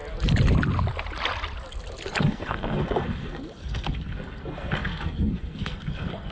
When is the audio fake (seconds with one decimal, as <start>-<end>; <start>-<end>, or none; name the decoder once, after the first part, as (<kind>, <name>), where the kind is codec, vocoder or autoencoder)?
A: 2.2-6.3 (codec, SNAC)

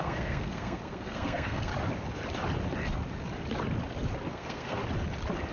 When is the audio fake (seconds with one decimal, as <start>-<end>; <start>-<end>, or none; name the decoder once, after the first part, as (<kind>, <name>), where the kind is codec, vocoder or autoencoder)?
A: 0.0-1.7 (codec, SNAC); 4.3-4.8